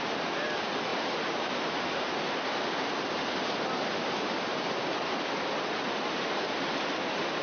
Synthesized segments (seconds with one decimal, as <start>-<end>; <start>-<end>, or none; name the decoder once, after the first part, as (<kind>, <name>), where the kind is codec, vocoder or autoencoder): 0.9-3.3 (vocoder, BigVGAN v2); 4.5-5.1